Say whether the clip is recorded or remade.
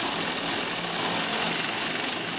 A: recorded